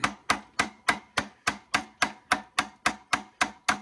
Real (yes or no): yes